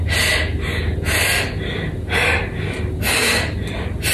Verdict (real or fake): real